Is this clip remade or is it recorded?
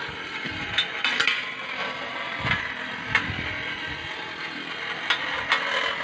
recorded